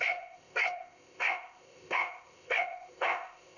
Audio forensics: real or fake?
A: fake